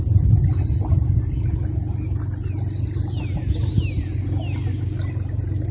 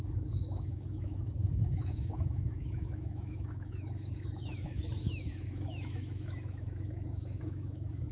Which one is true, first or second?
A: first